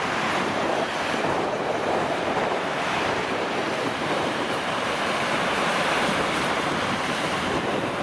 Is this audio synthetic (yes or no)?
yes